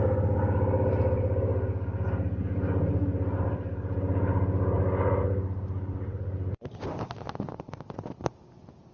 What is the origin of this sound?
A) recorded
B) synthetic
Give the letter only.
A